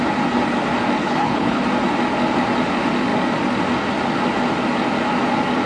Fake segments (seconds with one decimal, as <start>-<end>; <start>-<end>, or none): 1.0-1.6